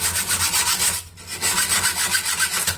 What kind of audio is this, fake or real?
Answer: real